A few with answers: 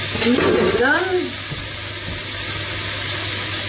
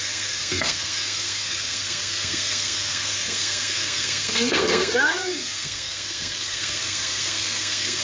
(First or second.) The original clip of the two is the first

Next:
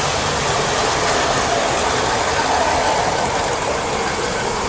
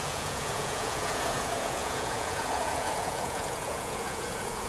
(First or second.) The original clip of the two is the first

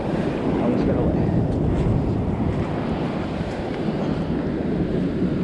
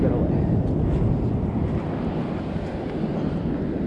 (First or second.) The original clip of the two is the second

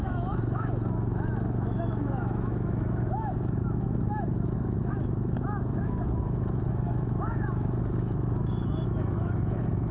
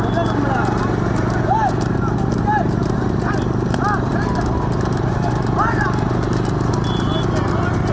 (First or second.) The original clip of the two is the second